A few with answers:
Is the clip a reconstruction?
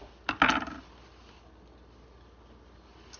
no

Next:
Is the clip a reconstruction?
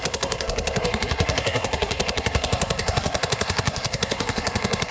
yes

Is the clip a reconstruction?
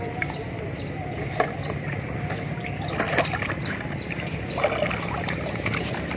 no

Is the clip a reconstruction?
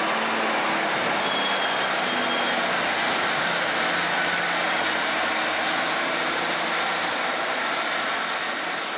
no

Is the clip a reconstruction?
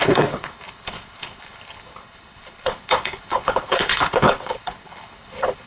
yes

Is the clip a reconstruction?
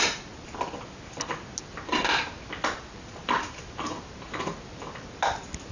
no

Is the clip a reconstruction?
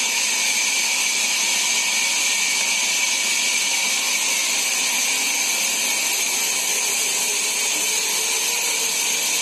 no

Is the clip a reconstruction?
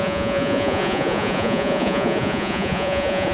yes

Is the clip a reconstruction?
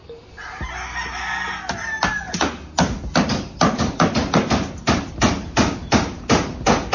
no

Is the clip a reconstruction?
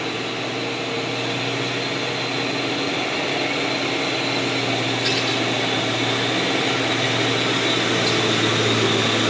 no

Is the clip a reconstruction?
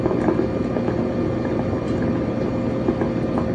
no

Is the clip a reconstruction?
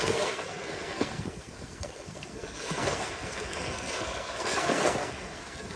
yes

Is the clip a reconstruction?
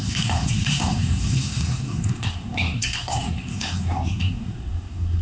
yes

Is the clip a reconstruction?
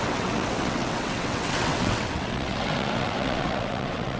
yes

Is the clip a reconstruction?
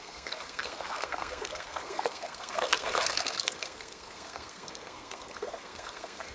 yes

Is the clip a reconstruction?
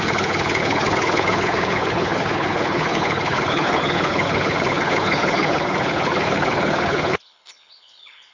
yes